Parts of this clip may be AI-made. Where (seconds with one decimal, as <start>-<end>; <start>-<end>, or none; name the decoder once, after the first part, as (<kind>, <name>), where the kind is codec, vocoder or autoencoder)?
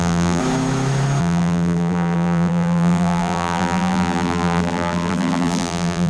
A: 0.0-0.4 (vocoder, BigVGAN v2); 1.2-6.1